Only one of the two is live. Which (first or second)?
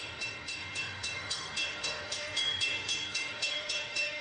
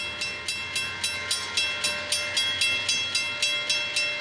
second